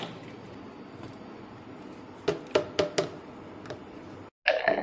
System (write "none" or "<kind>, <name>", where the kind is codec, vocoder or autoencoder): none